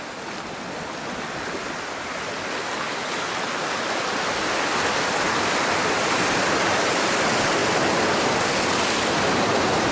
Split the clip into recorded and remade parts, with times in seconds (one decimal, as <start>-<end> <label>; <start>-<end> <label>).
0.0-9.9 recorded